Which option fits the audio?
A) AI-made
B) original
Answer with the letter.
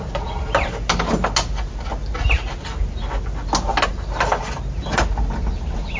B